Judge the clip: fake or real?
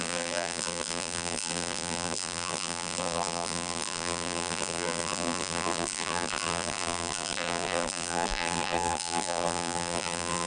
fake